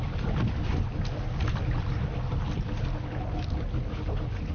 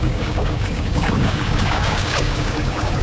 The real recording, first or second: first